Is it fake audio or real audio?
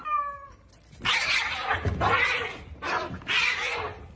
real